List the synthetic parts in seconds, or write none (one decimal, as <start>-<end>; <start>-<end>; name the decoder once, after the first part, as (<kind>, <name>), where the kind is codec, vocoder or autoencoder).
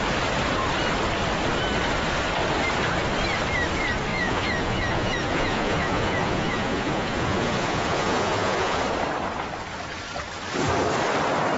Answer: 4.1-8.8 (vocoder, Vocos)